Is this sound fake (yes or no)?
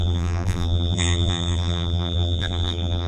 yes